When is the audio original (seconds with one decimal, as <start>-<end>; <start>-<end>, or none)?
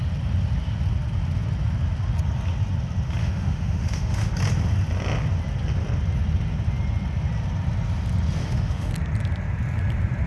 0.0-3.2; 4.3-8.4; 8.9-10.3